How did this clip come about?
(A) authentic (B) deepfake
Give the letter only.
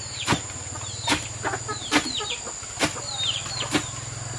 A